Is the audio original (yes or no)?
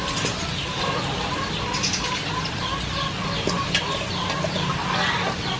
yes